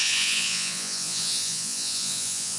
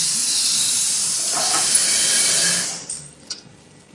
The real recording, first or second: second